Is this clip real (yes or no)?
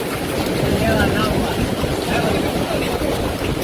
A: yes